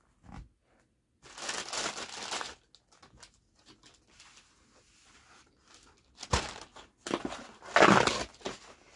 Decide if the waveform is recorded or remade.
recorded